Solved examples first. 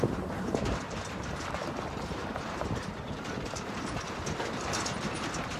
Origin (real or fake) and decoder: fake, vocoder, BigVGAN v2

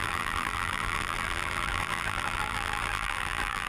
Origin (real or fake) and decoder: fake, vocoder, BigVGAN v2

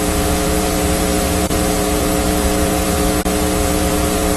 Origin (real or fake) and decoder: fake, vocoder, BigVGAN v2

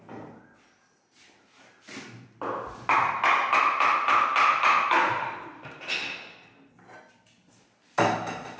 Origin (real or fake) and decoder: real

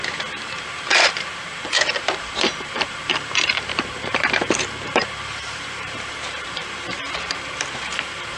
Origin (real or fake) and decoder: fake, vocoder, BigVGAN v2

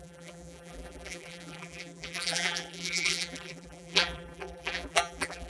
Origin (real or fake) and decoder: fake, vocoder, BigVGAN v2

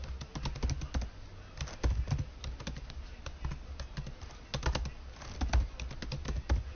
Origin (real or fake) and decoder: real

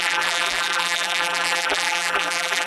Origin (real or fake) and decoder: fake, vocoder, BigVGAN v2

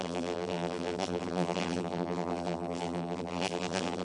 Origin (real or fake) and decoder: fake, vocoder, BigVGAN v2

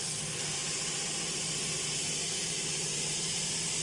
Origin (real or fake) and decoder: real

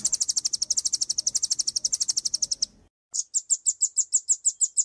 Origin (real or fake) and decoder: real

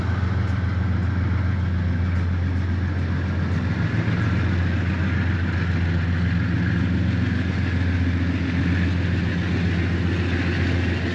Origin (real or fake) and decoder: real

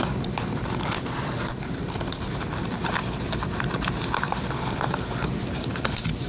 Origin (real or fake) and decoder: fake, vocoder, BigVGAN v2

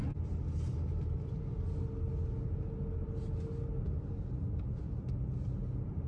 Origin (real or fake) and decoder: real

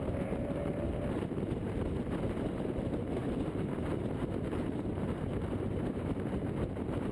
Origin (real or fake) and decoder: fake, vocoder, BigVGAN v2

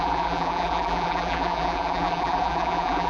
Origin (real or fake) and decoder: fake, vocoder, BigVGAN v2